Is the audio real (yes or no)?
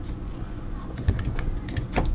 no